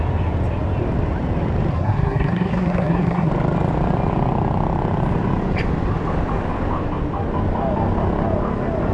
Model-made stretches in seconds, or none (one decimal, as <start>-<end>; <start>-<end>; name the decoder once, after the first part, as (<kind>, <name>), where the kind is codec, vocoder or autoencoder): 1.7-3.3 (codec, SNAC)